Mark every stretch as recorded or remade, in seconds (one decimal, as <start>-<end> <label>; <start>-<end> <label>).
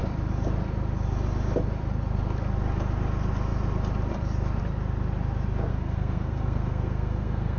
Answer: 0.0-5.7 recorded; 5.7-7.6 remade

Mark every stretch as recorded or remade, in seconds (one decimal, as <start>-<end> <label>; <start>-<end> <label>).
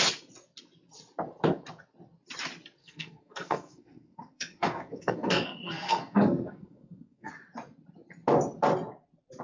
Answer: 0.0-2.8 recorded; 2.8-7.3 remade; 7.3-9.4 recorded